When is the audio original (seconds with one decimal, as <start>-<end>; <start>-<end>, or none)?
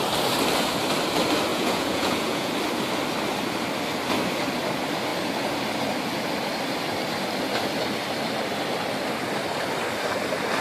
0.0-1.5; 2.5-10.6